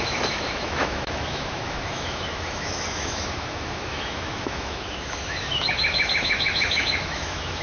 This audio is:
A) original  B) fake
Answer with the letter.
B